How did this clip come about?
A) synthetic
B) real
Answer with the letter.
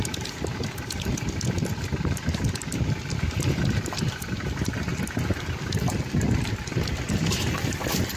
A